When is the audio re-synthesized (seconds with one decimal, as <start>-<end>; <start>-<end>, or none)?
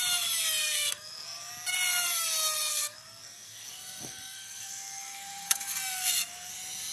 0.6-1.5; 2.7-6.5